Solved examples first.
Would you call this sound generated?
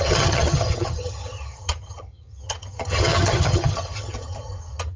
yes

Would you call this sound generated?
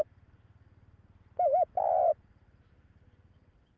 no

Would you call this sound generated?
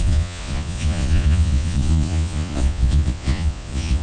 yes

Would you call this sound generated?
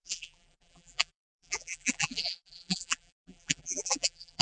yes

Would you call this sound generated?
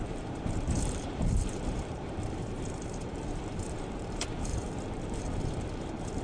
yes